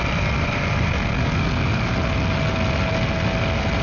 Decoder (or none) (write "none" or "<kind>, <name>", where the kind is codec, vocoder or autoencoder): none